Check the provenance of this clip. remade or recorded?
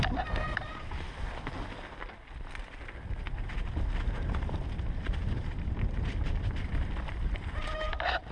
recorded